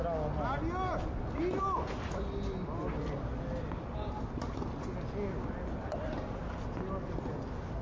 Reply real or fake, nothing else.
real